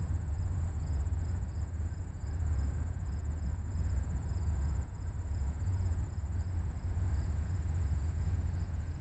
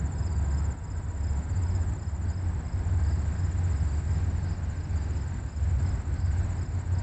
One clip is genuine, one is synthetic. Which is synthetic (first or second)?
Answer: first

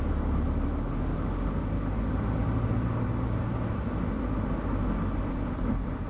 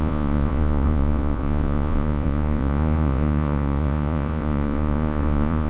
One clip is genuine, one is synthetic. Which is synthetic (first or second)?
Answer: second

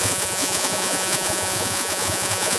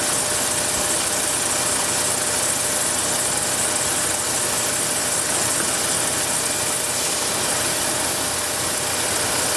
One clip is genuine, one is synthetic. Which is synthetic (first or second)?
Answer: first